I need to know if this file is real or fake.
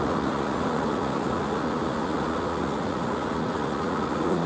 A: fake